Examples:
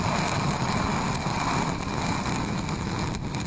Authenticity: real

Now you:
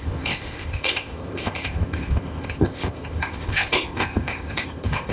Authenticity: fake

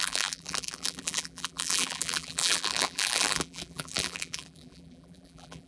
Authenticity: fake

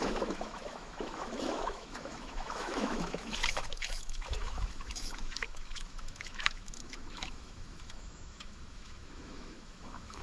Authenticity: fake